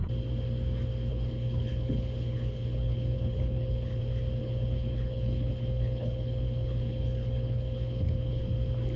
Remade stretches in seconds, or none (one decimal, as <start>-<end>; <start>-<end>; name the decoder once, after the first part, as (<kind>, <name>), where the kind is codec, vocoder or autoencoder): 1.1-4.0 (codec, HILCodec); 4.4-8.4